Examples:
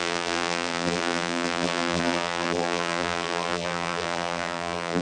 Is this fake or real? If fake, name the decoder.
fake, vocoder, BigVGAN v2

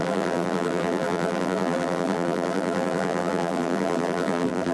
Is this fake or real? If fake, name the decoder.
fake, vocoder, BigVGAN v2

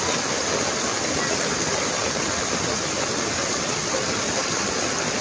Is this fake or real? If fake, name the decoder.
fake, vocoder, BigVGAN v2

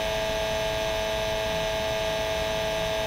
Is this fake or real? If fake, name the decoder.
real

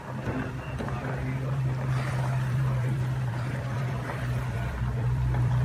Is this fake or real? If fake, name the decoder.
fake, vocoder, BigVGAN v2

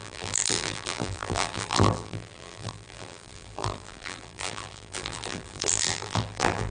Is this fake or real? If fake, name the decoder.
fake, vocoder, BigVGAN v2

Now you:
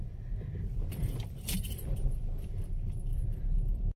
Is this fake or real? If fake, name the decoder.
fake, vocoder, BigVGAN v2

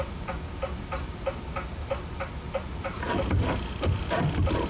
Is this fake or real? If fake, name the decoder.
real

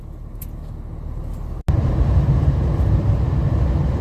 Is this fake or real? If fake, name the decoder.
real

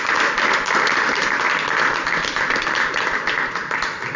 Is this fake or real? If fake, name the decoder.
real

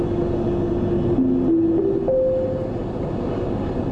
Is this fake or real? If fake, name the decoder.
real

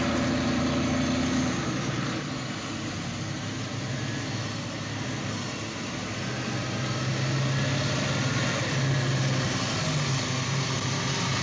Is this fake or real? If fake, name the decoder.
real